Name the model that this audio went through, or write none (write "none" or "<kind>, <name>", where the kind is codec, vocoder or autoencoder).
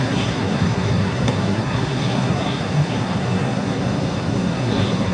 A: codec, SNAC